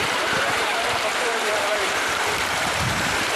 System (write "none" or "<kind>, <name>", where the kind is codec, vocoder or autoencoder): vocoder, BigVGAN v2